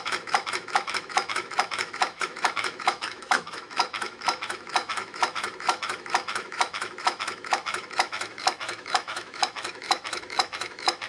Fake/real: fake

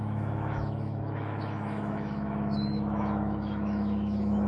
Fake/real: fake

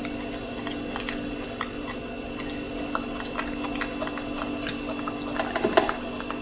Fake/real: real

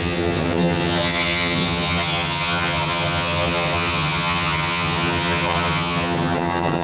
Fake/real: fake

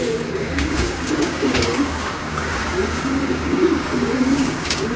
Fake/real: fake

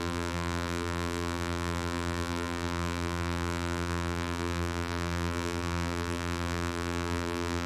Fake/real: fake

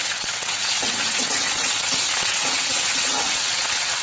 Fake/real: fake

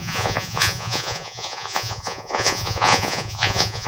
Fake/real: fake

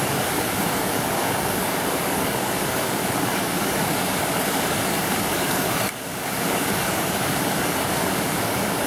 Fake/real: fake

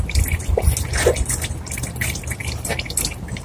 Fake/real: real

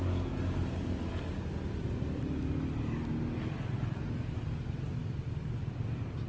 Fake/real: real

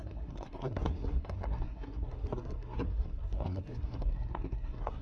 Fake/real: fake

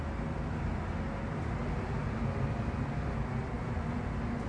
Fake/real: real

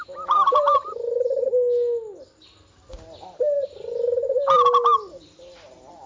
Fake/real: real